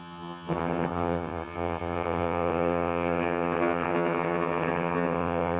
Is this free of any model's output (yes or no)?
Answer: no